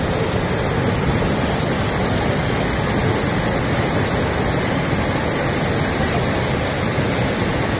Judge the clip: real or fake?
real